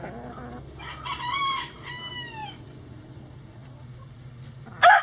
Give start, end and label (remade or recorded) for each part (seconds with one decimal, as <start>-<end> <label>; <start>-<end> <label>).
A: 0.0-1.1 recorded; 1.1-1.8 remade; 1.8-2.4 recorded; 2.4-3.2 remade; 3.2-5.0 recorded